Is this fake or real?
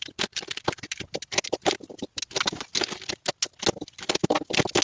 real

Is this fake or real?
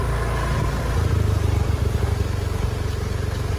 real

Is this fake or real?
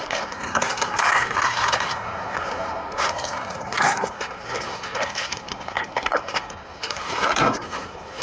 fake